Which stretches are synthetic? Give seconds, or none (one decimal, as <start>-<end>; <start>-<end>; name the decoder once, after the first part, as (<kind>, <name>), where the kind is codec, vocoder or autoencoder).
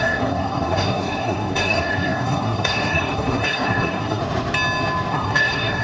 0.0-4.2 (codec, SNAC); 5.1-5.8